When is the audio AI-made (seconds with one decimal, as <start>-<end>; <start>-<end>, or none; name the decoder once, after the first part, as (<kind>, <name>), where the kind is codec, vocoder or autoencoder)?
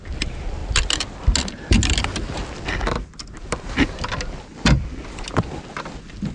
none